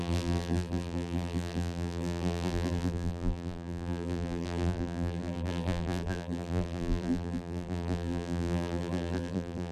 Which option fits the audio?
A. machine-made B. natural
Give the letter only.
A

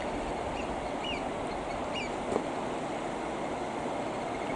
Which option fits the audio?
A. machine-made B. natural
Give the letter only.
B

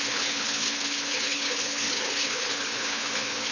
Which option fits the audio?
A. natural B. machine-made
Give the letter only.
B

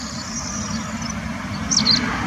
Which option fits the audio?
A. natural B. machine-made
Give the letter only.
A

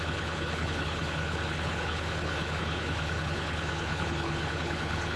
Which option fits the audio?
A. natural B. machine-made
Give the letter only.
B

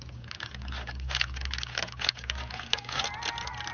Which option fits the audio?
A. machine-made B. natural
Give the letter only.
B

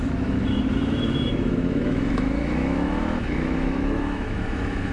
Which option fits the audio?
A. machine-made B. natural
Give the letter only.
A